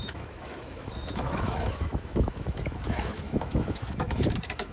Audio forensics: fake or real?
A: fake